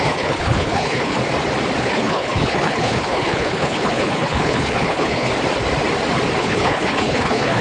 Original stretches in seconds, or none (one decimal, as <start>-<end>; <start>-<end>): 1.2-1.8; 5.3-6.4